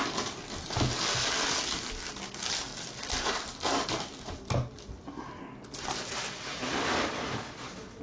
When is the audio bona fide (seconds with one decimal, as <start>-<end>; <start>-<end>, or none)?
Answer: 0.0-8.0